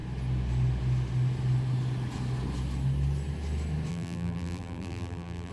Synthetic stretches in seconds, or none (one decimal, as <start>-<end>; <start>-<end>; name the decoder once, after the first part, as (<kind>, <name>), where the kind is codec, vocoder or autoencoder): 3.9-5.5 (vocoder, BigVGAN v2)